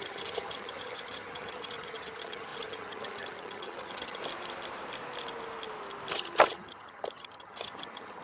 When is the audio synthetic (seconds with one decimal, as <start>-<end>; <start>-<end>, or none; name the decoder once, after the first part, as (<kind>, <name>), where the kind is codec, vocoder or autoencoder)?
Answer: 0.0-4.2 (vocoder, HiFi-GAN); 6.1-8.2